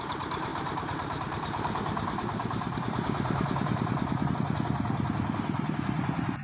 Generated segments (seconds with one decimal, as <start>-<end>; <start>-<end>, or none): 0.5-4.3